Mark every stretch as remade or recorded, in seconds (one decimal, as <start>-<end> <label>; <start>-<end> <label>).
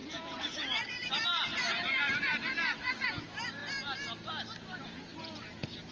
0.0-3.6 remade; 3.6-4.8 recorded; 4.8-5.9 remade